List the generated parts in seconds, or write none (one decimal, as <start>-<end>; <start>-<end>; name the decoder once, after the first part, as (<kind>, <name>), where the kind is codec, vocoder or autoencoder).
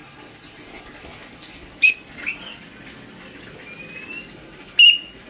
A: none